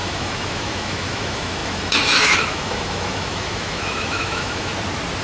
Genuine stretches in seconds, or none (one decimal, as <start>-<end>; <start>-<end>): 4.7-5.2